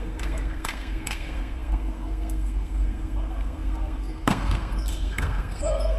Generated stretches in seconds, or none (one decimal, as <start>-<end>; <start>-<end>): 0.0-6.0